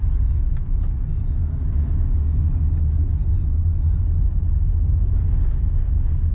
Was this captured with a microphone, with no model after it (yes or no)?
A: yes